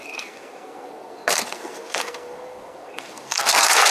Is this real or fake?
fake